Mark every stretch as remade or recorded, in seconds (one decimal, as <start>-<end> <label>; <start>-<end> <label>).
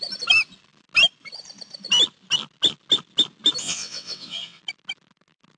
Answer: 0.0-3.6 recorded; 3.6-4.6 remade; 4.6-5.6 recorded